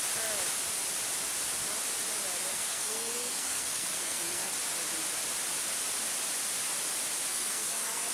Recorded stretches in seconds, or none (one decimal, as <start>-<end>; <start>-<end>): 0.0-2.5; 4.5-7.3